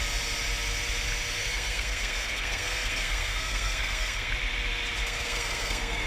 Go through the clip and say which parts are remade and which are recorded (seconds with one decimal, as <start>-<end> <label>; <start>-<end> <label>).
0.0-1.4 recorded; 1.4-4.3 remade; 4.3-5.0 recorded; 5.0-6.1 remade